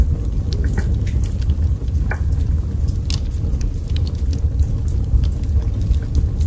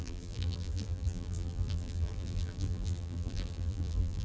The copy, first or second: second